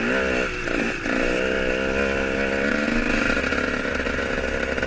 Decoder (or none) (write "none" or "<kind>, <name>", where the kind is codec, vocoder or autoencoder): none